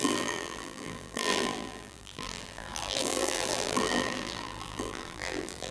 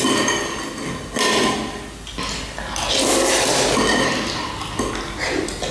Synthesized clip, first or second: first